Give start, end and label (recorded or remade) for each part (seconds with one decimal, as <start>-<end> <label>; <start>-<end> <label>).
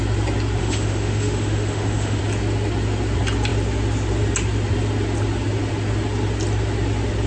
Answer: 0.0-0.6 recorded; 0.6-2.2 remade; 2.2-7.3 recorded